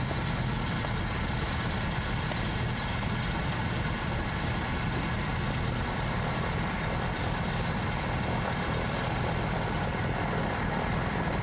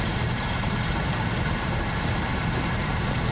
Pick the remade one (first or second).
second